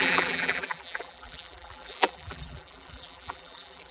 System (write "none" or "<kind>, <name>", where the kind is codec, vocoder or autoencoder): vocoder, BigVGAN v2